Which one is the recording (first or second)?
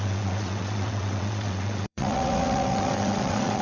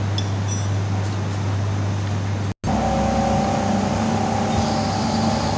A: second